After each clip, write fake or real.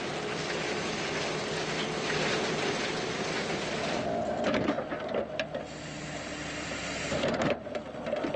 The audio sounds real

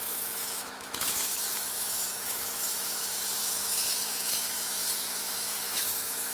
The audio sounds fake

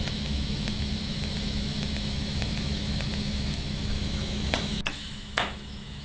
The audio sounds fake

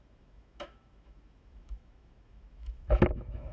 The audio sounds fake